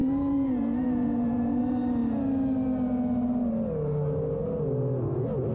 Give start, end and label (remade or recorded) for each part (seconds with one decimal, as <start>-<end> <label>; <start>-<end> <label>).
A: 0.0-1.6 remade; 1.6-5.5 recorded